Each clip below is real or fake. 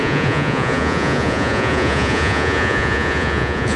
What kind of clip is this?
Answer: fake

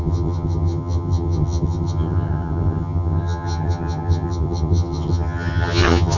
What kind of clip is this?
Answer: fake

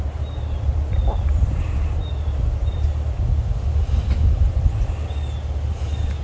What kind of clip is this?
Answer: real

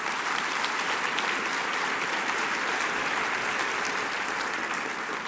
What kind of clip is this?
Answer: real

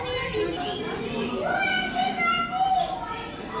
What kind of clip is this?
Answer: real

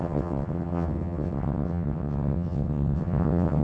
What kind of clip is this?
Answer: fake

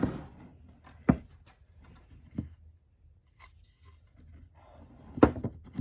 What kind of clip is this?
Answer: real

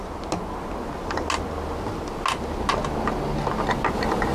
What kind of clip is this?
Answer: real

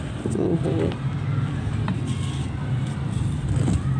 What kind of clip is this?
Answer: real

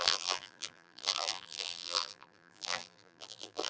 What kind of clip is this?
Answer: fake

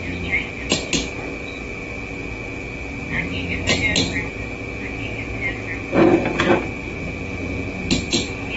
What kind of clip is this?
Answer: real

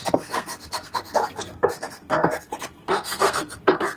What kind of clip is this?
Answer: fake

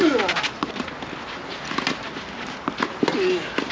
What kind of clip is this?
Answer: real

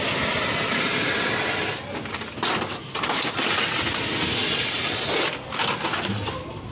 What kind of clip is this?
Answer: real